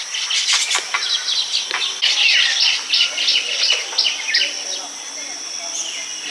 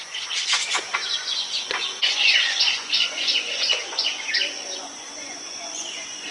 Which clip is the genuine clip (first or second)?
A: first